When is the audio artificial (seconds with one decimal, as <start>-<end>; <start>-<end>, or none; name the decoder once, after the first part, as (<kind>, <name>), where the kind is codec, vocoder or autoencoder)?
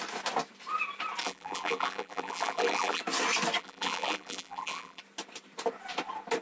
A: 1.2-3.0 (vocoder, BigVGAN v2); 3.6-5.0